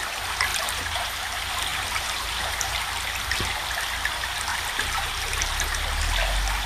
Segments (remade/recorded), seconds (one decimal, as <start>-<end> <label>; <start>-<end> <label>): 0.0-0.5 recorded; 0.5-1.1 remade; 1.1-1.7 recorded; 1.7-2.7 remade; 2.7-4.5 recorded; 4.5-5.1 remade; 5.1-6.7 recorded